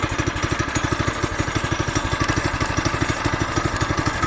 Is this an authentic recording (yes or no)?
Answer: yes